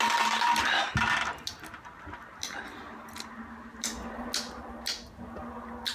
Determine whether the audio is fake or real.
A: real